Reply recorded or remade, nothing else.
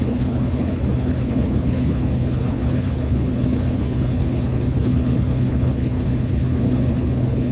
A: remade